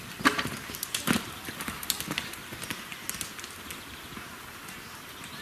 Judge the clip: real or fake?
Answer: real